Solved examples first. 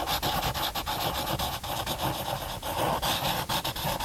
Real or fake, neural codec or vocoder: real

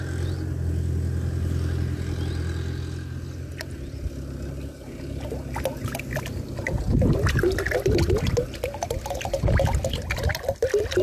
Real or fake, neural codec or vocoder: real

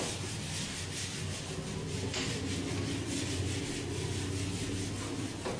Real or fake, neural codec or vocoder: real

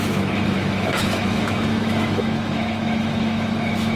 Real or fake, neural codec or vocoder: fake, autoencoder, DAC-VAE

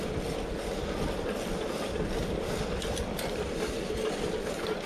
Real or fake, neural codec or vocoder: real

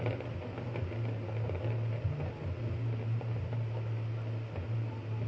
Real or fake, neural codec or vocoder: real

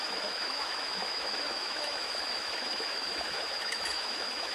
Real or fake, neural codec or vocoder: fake, autoencoder, DAC-VAE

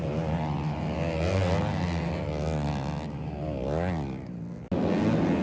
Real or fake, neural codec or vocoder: real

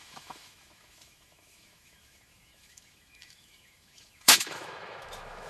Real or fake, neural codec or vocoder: fake, autoencoder, DAC-VAE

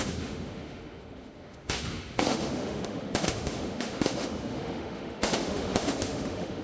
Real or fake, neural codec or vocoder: fake, autoencoder, DAC-VAE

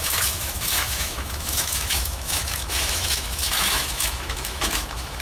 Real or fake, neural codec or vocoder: fake, autoencoder, DAC-VAE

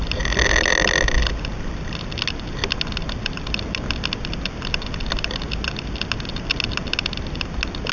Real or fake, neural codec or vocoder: real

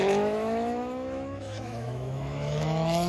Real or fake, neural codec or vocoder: fake, autoencoder, DAC-VAE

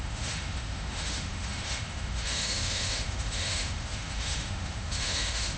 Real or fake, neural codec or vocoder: fake, autoencoder, DAC-VAE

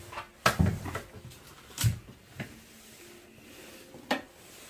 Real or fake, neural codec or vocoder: real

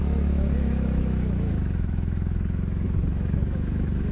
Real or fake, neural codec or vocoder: fake, autoencoder, DAC-VAE